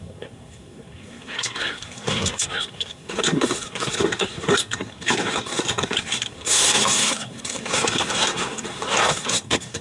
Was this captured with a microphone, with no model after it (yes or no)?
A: no